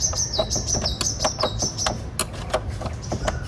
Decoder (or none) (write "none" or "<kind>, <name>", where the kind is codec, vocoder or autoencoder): none